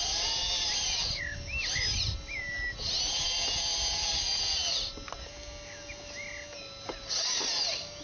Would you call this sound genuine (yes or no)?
yes